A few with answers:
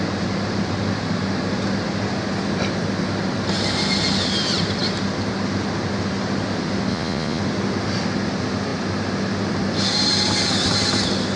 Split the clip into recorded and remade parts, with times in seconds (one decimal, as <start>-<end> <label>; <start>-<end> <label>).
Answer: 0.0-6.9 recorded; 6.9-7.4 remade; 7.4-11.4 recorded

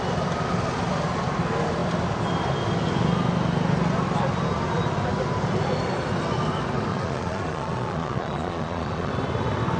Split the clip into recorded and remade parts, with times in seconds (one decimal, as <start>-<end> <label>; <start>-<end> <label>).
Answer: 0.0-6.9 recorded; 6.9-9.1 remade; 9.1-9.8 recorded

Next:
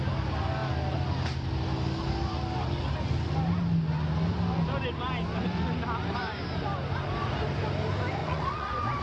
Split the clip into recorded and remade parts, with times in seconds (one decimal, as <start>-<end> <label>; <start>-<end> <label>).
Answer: 0.0-8.2 recorded; 8.2-9.0 remade

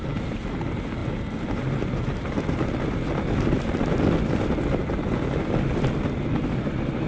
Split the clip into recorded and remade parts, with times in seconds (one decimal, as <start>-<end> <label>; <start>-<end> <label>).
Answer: 0.0-7.1 recorded

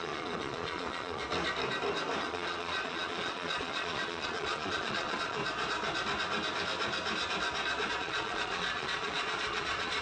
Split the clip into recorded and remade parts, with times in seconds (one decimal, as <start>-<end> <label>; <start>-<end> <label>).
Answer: 0.0-1.2 remade; 1.2-2.2 recorded; 2.2-5.4 remade; 5.4-7.9 recorded; 7.9-10.0 remade

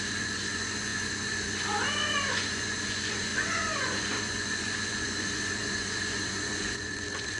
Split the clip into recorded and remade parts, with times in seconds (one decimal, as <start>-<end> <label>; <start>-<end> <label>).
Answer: 0.0-7.4 remade

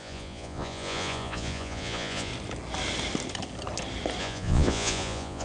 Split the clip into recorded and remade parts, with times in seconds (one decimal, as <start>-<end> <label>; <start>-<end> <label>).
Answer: 0.0-2.3 remade; 2.3-4.2 recorded; 4.2-5.4 remade

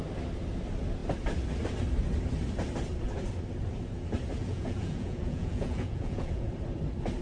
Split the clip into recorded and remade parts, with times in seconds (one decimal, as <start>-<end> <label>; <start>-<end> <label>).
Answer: 0.0-4.4 recorded; 4.4-6.5 remade; 6.5-7.2 recorded